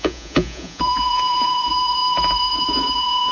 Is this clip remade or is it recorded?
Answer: remade